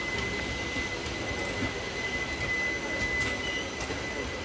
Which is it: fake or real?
real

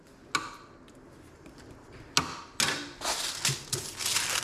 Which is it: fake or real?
real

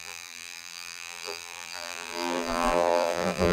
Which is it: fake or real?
fake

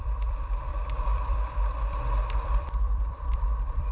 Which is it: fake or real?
fake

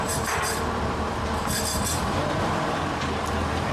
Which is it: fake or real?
fake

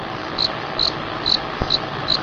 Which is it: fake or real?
fake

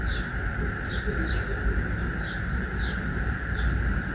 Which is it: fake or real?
real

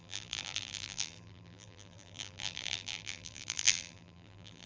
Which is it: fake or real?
fake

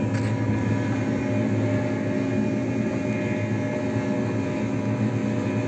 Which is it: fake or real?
real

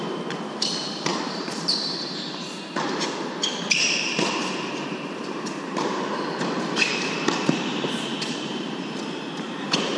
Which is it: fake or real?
fake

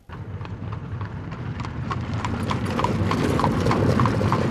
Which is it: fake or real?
fake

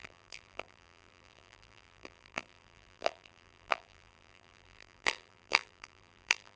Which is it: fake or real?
fake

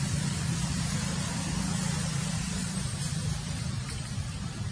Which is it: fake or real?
fake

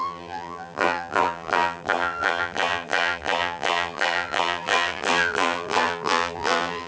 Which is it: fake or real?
fake